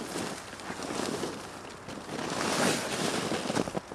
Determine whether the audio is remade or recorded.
recorded